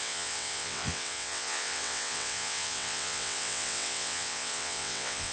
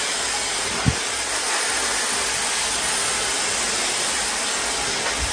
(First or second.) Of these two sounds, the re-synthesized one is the first